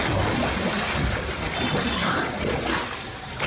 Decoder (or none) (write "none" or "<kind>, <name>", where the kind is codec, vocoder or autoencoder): none